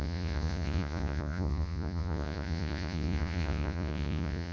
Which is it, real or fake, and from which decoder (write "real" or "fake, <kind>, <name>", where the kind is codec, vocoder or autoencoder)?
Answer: fake, vocoder, Vocos